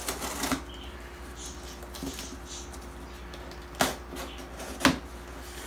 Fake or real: real